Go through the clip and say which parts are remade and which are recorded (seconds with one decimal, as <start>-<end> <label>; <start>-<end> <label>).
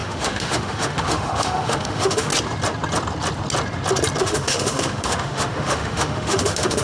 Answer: 0.0-2.3 remade; 2.3-4.2 recorded; 4.2-6.8 remade